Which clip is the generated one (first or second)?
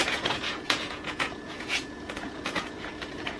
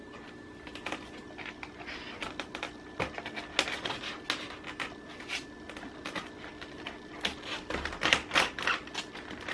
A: first